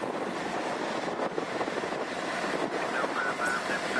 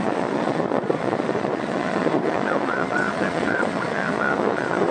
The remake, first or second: second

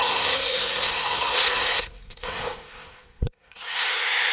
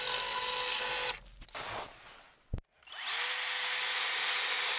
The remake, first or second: first